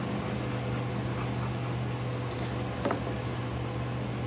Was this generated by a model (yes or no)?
no